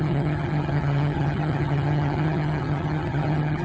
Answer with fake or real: fake